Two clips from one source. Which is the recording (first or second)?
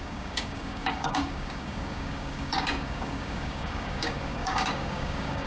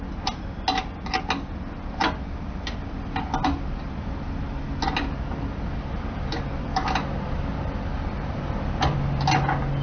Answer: second